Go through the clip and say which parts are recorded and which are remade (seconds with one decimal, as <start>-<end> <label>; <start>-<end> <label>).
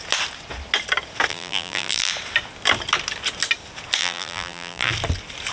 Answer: 0.0-1.3 recorded; 1.3-2.1 remade; 2.1-4.0 recorded; 4.0-4.9 remade; 4.9-5.5 recorded